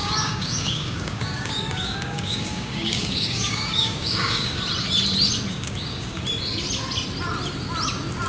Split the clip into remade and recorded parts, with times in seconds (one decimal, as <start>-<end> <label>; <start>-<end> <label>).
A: 0.0-4.6 remade; 4.6-5.5 recorded; 5.5-6.2 remade; 6.2-8.3 recorded